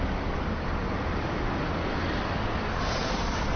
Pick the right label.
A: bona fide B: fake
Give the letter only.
A